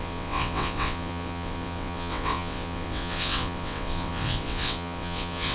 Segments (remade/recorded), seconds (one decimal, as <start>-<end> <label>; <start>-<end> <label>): 0.0-5.5 remade